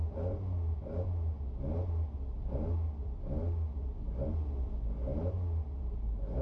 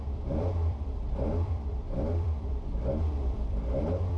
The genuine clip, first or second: first